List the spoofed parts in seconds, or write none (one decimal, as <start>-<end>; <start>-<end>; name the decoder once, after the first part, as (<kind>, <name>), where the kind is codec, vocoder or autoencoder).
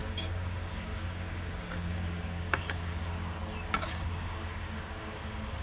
0.0-3.4 (codec, DAC); 3.9-5.6